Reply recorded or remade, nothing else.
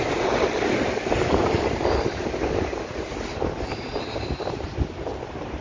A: remade